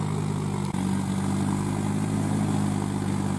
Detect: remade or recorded recorded